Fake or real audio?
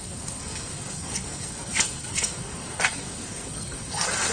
fake